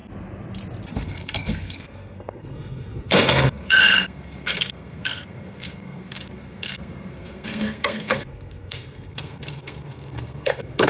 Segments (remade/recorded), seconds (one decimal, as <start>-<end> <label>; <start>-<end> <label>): 0.0-0.9 recorded; 0.9-10.9 remade